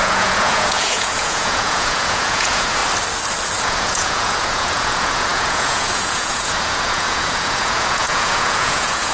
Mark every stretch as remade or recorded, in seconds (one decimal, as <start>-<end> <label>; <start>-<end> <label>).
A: 0.0-2.8 remade; 2.8-3.6 recorded; 3.6-9.1 remade